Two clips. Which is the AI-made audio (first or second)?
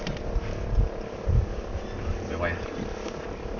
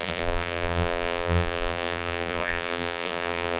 second